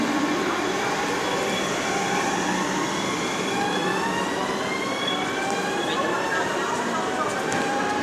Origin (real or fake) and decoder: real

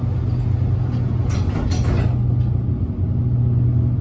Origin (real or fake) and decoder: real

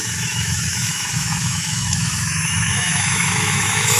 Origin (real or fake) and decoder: fake, autoencoder, DAC-VAE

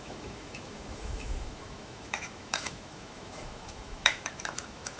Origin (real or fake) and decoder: fake, autoencoder, DAC-VAE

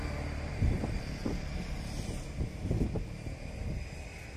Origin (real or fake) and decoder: real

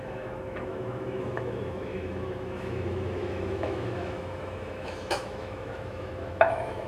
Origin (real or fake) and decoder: fake, autoencoder, DAC-VAE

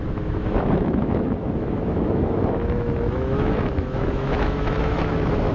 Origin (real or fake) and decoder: fake, autoencoder, DAC-VAE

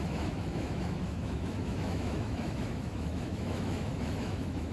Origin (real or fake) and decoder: fake, autoencoder, DAC-VAE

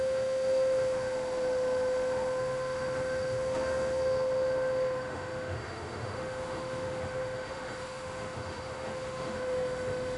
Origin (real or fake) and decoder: fake, autoencoder, DAC-VAE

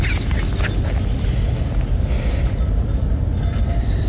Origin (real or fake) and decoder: real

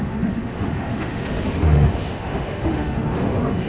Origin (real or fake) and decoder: fake, autoencoder, DAC-VAE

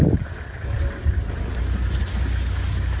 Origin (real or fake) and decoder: real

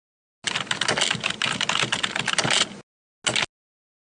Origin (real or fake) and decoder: real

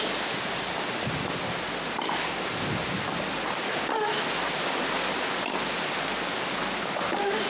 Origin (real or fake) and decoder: real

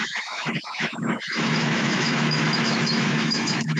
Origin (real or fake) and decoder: fake, autoencoder, DAC-VAE